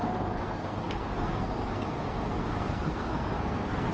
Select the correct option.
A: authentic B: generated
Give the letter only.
B